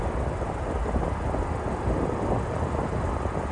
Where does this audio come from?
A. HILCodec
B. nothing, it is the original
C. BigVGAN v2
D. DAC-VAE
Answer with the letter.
B